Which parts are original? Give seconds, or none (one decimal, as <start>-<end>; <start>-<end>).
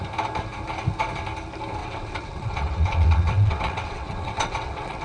0.0-1.8